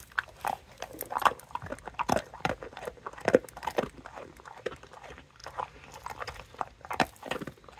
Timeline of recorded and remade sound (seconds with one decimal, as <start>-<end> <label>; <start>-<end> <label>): 0.0-7.8 recorded